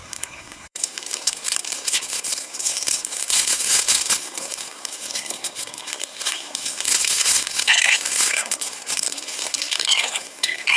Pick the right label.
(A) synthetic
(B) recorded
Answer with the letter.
A